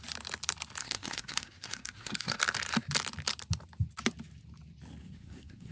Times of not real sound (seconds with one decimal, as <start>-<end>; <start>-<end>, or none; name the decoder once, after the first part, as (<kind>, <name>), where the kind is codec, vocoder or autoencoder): 0.8-2.4 (codec, SNAC); 5.0-5.7